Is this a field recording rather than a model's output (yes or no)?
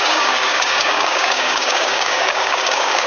no